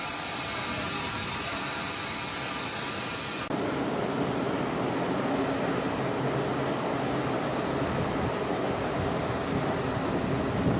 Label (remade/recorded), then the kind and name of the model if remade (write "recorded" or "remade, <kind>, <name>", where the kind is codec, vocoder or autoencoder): recorded